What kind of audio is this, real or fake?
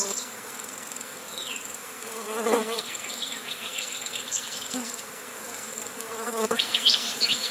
fake